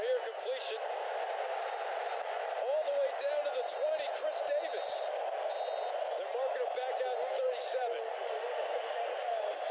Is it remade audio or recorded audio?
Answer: recorded